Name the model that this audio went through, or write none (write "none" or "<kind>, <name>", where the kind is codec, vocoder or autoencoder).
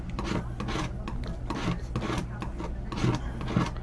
none